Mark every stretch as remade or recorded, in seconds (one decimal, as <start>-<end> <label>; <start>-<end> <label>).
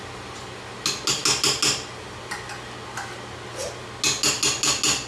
0.0-5.1 recorded